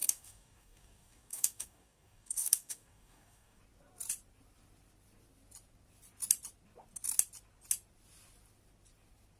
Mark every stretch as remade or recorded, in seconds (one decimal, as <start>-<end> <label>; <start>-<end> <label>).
0.0-3.6 remade; 3.6-9.4 recorded